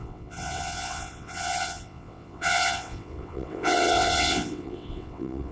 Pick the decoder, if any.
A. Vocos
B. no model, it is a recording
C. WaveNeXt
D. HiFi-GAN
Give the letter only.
C